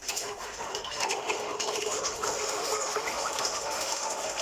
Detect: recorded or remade remade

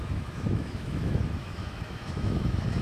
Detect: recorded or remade remade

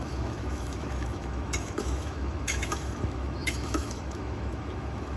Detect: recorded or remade remade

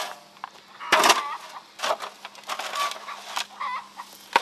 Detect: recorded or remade recorded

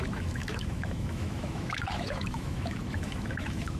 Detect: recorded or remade remade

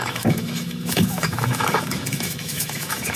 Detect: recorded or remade remade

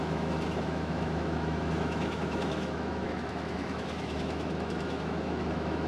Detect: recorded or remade remade